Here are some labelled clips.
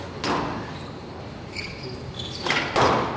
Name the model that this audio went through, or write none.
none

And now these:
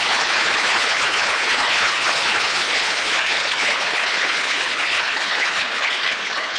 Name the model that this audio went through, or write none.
codec, HILCodec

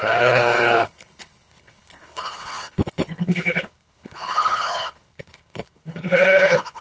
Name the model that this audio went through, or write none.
codec, HILCodec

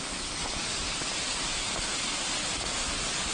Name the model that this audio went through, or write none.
none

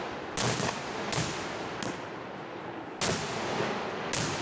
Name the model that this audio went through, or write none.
none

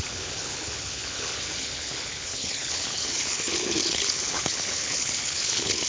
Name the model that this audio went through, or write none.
codec, HILCodec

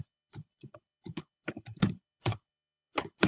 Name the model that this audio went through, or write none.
codec, HILCodec